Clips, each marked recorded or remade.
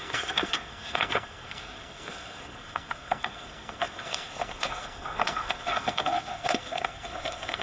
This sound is remade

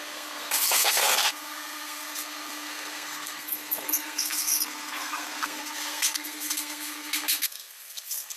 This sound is remade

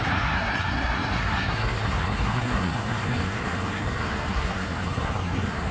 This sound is remade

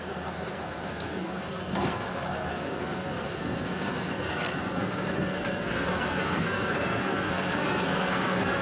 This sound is remade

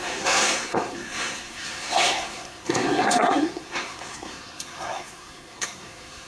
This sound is remade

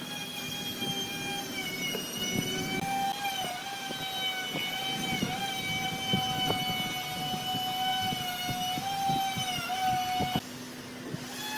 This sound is recorded